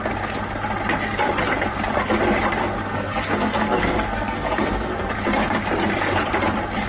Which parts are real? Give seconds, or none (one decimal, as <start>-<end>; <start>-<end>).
0.0-2.6; 5.1-6.9